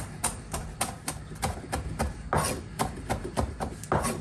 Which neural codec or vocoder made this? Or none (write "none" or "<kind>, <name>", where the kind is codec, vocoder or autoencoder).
none